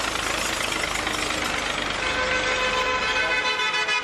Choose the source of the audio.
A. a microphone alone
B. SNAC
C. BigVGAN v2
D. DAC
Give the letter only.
A